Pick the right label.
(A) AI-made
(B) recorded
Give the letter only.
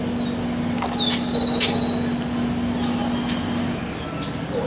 B